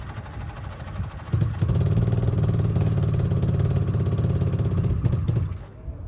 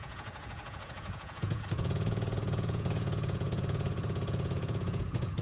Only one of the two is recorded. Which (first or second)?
first